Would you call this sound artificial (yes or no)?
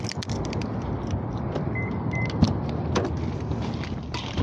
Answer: no